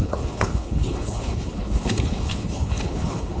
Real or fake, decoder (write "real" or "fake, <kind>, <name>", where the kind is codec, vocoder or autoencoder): fake, codec, HILCodec